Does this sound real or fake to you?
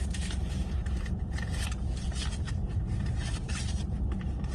fake